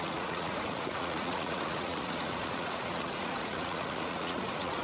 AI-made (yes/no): yes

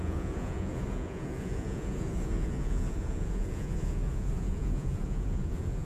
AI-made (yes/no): yes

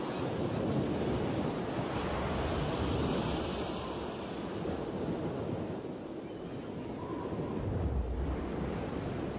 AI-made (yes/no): no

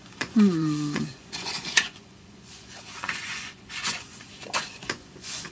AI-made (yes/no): yes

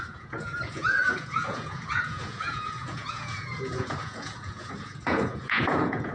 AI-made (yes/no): yes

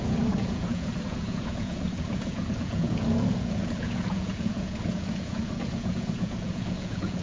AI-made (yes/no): yes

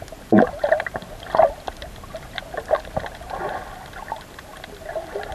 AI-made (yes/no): no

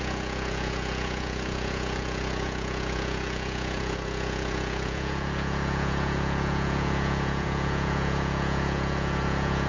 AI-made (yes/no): yes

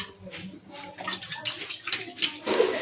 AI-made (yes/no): no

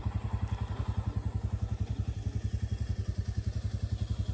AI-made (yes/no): no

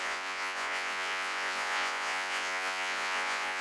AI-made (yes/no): yes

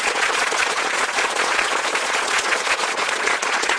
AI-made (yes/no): yes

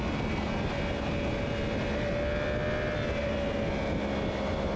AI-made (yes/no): no